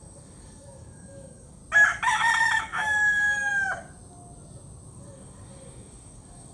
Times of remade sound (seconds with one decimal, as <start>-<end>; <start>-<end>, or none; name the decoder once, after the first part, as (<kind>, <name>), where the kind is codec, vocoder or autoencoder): 0.0-1.6 (codec, DAC); 2.6-3.5; 4.9-6.5